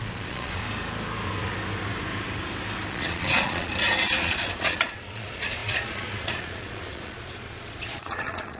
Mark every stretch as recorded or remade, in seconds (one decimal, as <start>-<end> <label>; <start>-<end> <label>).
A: 0.0-0.6 remade; 0.6-2.9 recorded; 2.9-3.7 remade; 3.7-4.2 recorded; 4.2-8.6 remade